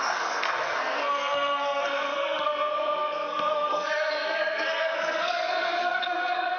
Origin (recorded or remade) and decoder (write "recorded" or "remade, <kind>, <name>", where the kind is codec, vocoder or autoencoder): remade, codec, SNAC